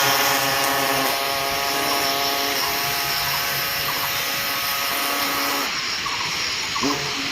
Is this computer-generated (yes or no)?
no